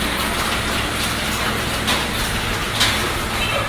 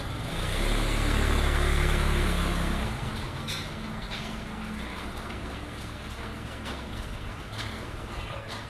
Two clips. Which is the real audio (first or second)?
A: first